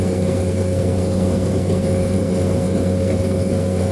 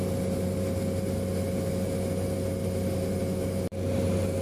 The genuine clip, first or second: second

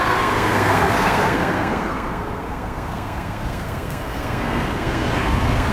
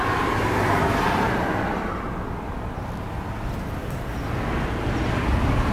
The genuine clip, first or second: second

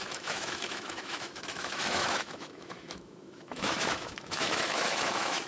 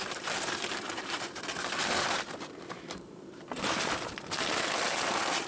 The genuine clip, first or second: second